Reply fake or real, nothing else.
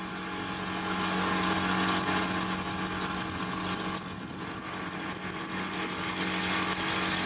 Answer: real